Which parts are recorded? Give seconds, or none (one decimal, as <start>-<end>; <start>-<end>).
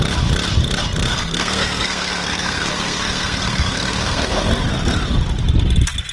0.0-1.1; 4.5-6.1